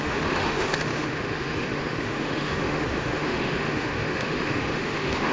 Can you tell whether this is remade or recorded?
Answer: remade